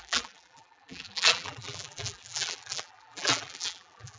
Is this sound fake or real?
fake